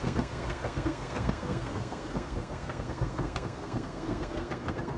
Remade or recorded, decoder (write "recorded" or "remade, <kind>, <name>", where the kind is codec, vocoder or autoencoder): remade, codec, SNAC